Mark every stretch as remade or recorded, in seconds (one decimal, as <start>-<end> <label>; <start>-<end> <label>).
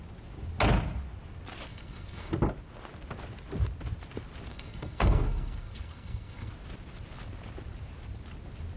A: 0.0-1.7 recorded; 1.7-2.3 remade; 2.3-4.5 recorded; 4.5-6.5 remade; 6.5-8.8 recorded